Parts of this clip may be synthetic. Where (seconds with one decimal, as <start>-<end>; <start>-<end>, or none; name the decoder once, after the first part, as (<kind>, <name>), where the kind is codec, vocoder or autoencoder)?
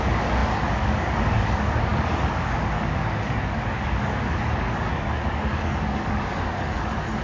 0.0-7.2 (codec, DAC)